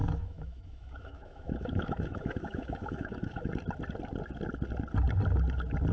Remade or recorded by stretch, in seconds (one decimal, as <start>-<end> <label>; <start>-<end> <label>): 0.0-3.5 remade; 3.5-5.9 recorded